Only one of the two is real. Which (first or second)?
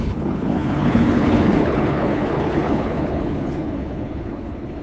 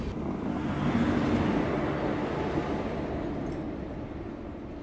second